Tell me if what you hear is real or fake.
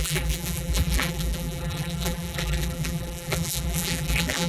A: fake